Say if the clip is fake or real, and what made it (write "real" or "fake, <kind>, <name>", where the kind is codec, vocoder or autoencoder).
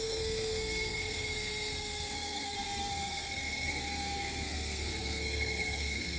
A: fake, codec, SNAC